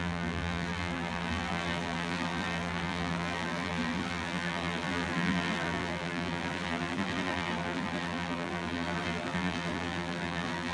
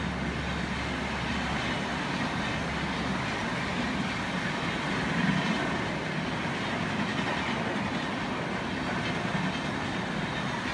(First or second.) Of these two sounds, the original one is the second